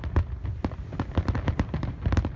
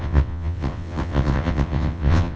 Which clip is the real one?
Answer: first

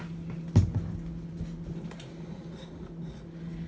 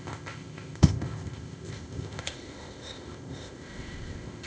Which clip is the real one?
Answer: first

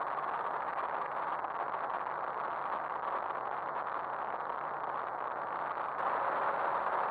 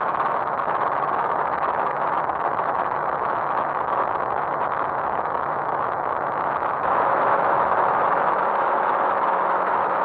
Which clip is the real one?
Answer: first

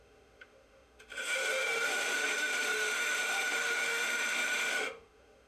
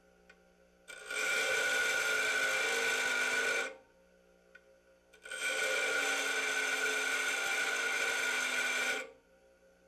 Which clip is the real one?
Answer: second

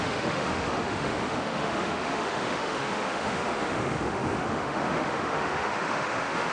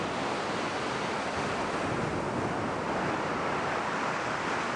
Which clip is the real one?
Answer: second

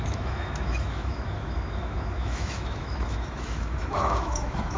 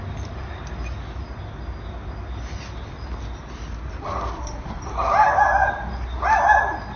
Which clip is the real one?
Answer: second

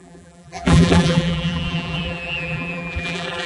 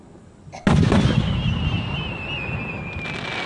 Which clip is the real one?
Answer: second